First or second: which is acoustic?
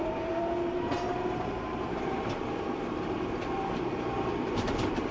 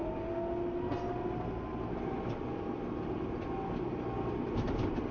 second